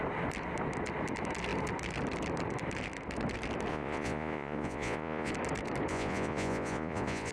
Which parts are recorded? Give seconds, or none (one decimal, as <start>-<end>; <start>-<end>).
0.0-3.7; 5.3-5.9